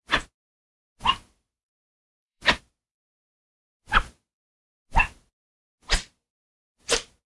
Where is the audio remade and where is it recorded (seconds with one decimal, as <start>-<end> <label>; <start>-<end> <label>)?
0.0-2.2 recorded; 2.2-2.7 remade; 2.7-7.3 recorded